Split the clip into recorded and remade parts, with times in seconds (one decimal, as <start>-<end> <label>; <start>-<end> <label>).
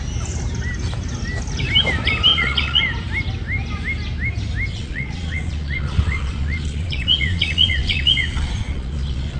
0.0-2.3 recorded; 2.3-2.8 remade; 2.8-4.7 recorded; 4.7-9.4 remade